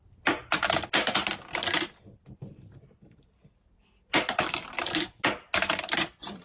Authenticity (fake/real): real